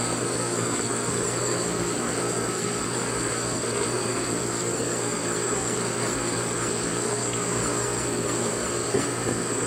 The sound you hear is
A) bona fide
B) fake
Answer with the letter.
B